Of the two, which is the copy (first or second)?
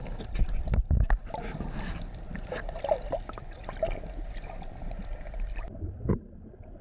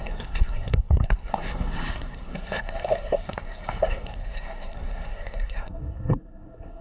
second